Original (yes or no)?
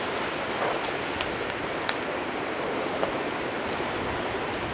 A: yes